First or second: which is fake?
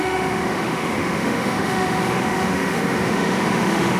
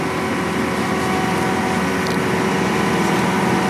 first